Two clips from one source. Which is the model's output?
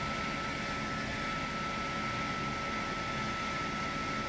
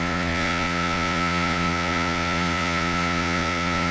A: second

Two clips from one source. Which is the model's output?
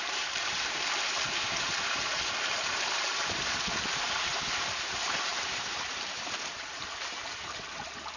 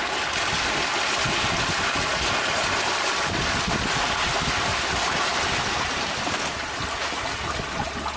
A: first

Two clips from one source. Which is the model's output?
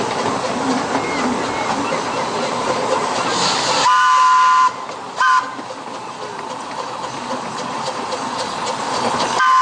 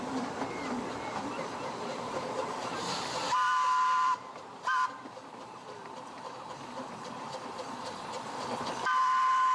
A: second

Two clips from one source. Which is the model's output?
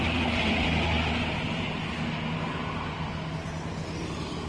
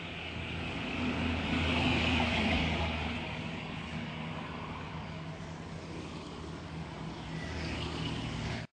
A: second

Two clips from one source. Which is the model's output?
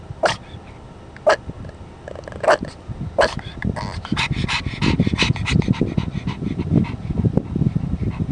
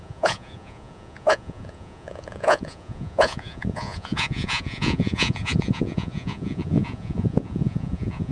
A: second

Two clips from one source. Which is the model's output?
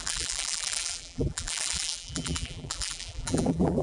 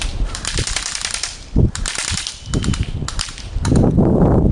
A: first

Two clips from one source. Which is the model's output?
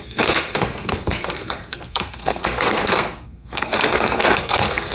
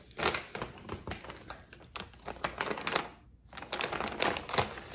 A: first